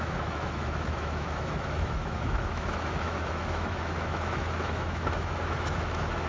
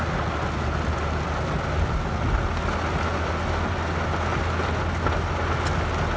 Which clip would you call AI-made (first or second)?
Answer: first